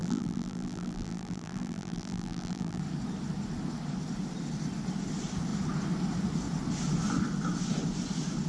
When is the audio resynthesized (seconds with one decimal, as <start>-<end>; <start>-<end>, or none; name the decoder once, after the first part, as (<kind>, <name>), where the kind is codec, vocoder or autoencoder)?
0.0-2.8 (vocoder, BigVGAN v2)